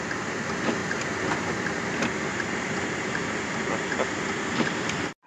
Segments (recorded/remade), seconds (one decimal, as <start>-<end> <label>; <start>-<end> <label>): 0.0-5.3 recorded